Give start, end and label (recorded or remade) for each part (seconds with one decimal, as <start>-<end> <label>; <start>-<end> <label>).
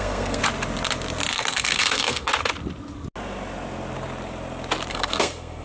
0.0-0.4 remade; 0.4-1.3 recorded; 1.3-2.3 remade; 2.3-4.9 recorded; 4.9-5.6 remade